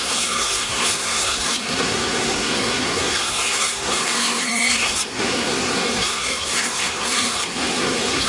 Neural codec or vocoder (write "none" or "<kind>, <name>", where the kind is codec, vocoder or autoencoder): codec, SNAC